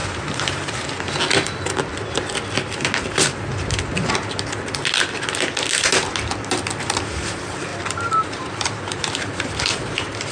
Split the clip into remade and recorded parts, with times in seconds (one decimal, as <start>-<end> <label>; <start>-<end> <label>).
0.0-0.8 remade; 0.8-7.7 recorded; 7.7-9.5 remade; 9.5-10.3 recorded